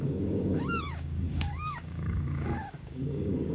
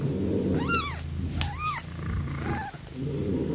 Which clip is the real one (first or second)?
second